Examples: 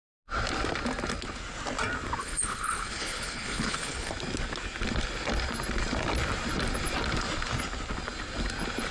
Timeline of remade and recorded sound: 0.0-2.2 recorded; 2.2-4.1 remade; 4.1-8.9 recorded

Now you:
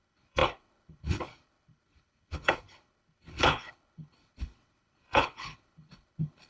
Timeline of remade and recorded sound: 0.0-6.5 remade

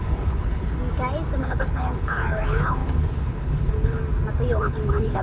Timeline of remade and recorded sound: 0.0-0.8 remade; 0.8-1.4 recorded; 1.4-4.0 remade; 4.0-4.5 recorded; 4.5-5.2 remade

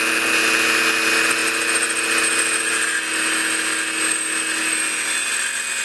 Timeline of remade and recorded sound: 0.0-5.8 recorded

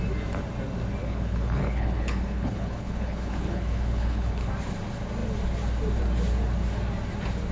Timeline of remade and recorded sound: 0.0-1.0 recorded; 1.0-4.5 remade; 4.5-7.5 recorded

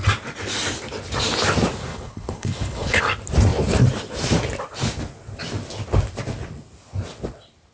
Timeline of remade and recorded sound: 0.0-1.9 recorded; 1.9-3.0 remade; 3.0-7.7 recorded

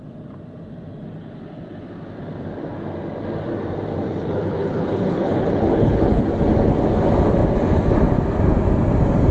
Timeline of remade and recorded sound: 0.0-4.1 recorded; 4.1-6.2 remade; 6.2-9.3 recorded

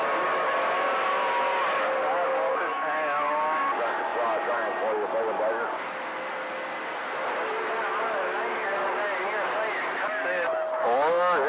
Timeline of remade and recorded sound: 0.0-11.5 recorded